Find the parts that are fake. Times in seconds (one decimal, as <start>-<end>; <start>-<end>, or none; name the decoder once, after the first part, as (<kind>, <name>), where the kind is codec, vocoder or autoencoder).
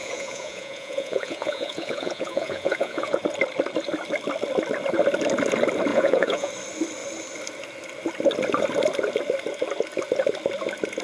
0.0-3.2 (vocoder, Vocos); 5.9-6.5